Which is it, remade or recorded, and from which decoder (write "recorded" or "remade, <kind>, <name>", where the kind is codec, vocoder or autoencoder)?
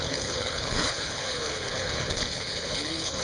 remade, codec, HILCodec